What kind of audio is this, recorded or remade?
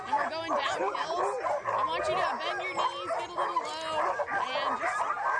recorded